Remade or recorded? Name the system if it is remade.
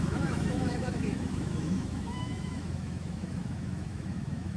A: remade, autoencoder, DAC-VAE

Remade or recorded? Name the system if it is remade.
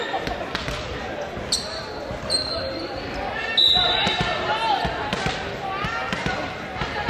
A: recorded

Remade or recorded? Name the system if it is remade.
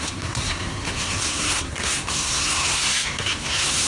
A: remade, codec, SNAC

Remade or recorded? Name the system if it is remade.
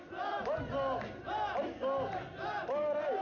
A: recorded